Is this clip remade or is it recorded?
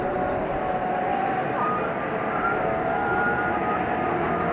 recorded